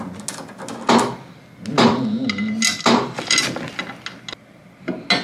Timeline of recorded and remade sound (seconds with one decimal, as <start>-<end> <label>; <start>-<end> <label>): 0.0-5.2 recorded